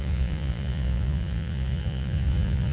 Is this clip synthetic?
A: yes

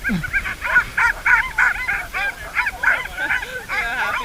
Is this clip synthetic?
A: yes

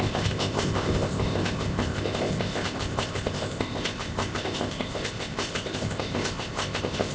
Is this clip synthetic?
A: yes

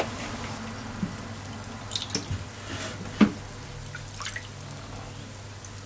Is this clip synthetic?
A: no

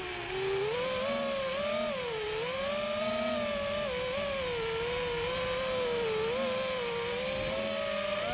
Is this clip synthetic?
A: no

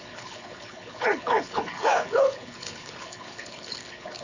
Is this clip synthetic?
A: yes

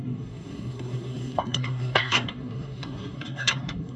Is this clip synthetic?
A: yes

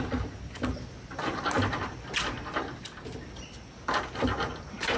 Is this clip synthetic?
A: no